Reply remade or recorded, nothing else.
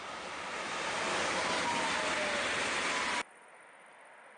recorded